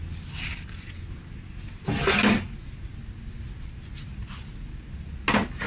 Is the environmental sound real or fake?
real